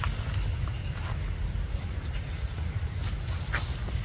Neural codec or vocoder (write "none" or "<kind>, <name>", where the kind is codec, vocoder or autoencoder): none